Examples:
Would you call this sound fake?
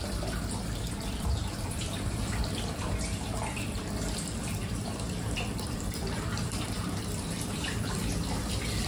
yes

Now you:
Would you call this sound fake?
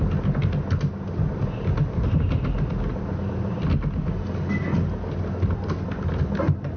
no